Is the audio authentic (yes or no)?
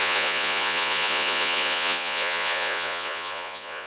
no